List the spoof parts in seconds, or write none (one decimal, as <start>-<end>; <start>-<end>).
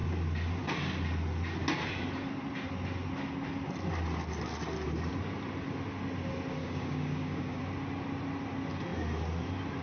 6.6-7.6